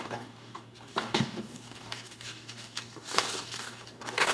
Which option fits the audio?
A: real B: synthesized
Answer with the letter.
B